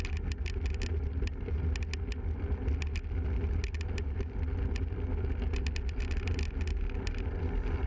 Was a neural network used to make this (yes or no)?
no